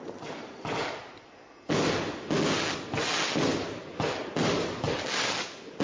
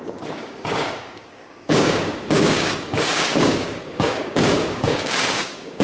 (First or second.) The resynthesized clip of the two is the second